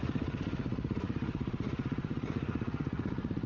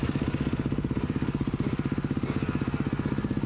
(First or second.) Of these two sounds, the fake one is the first